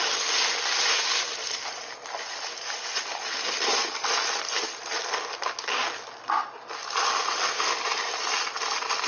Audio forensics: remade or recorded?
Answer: recorded